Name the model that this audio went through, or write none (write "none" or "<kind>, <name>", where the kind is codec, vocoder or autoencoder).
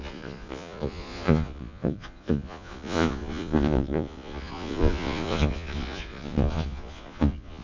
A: vocoder, Vocos